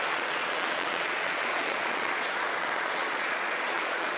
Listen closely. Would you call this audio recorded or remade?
remade